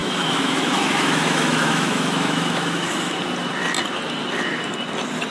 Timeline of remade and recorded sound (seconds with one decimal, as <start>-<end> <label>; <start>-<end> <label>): 0.0-3.2 remade; 3.2-5.3 recorded

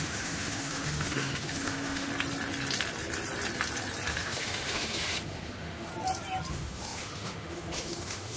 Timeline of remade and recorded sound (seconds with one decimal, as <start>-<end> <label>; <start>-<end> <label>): 0.0-2.1 remade; 2.1-4.1 recorded; 4.1-5.9 remade; 5.9-6.5 recorded; 6.5-8.4 remade

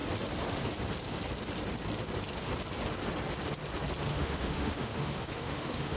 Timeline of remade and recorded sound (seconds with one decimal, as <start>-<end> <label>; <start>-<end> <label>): 0.0-4.1 recorded; 4.1-6.0 remade

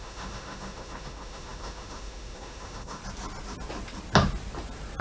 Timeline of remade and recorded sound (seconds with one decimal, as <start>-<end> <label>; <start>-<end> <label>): 0.0-3.0 remade; 3.0-5.0 recorded

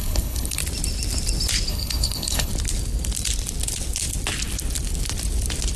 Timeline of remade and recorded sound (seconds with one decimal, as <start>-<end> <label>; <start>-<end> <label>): 0.0-0.6 remade; 0.6-1.7 recorded; 1.7-2.5 remade; 2.5-5.8 recorded

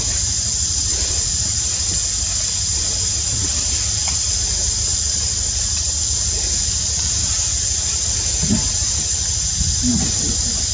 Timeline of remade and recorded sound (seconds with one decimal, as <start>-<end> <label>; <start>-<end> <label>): 0.0-0.9 recorded; 0.9-1.4 remade; 1.4-10.7 recorded

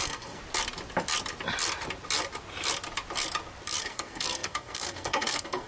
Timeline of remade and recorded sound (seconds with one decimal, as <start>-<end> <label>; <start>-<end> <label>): 0.0-0.4 remade; 0.4-3.8 recorded; 3.8-5.7 remade

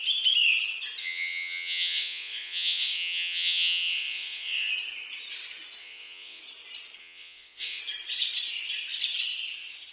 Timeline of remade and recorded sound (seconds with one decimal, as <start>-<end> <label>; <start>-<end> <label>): 0.0-1.0 recorded; 1.0-4.7 remade; 4.7-5.8 recorded; 5.8-6.4 remade; 6.4-7.0 recorded; 7.0-7.8 remade; 7.8-9.9 recorded